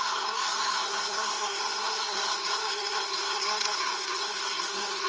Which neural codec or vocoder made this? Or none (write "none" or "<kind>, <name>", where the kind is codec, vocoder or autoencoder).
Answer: codec, SNAC